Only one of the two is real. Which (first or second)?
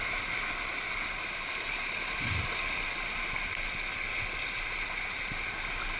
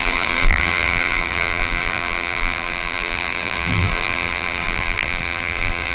first